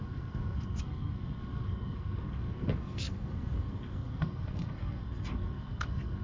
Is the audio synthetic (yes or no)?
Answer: yes